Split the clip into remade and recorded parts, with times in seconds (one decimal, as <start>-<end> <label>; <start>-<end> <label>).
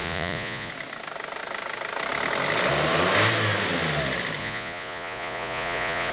0.0-0.7 remade; 0.7-4.4 recorded; 4.4-6.1 remade